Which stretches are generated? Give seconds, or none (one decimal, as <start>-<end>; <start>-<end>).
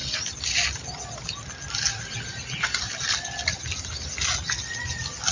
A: none